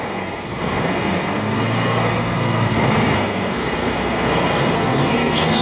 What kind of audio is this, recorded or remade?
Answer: remade